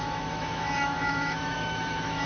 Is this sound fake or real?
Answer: fake